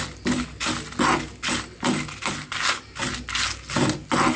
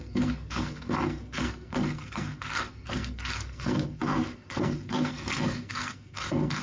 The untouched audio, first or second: first